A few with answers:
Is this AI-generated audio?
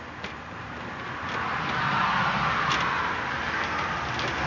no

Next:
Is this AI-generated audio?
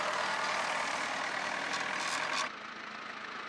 no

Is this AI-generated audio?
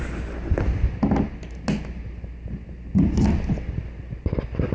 no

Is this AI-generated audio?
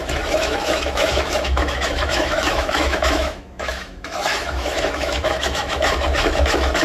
yes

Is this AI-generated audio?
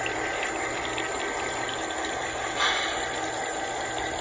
no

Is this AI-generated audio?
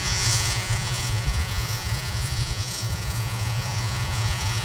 yes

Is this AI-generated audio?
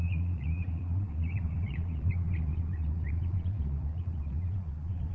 yes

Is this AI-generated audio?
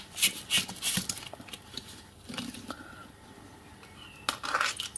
no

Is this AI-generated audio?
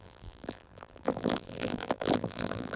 yes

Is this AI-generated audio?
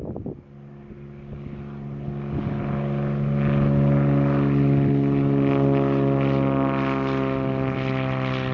no